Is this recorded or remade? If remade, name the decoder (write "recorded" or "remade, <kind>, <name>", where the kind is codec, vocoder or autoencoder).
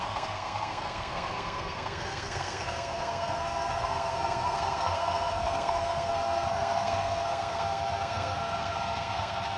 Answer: remade, codec, SNAC